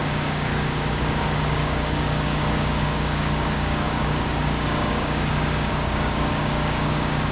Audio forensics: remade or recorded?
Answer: remade